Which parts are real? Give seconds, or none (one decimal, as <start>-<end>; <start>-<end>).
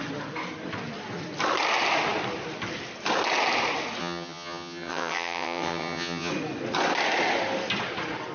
0.0-4.0; 6.3-8.3